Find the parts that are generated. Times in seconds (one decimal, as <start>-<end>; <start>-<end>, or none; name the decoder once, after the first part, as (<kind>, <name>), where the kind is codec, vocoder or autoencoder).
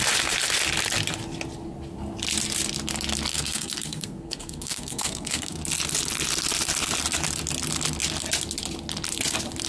3.3-5.6 (codec, SNAC)